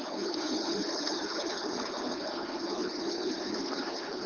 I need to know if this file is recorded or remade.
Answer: remade